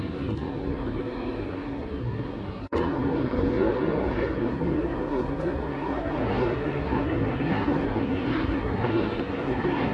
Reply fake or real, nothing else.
fake